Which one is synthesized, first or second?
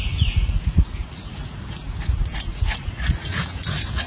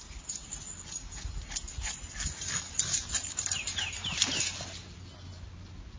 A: first